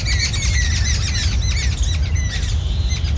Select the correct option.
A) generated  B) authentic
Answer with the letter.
B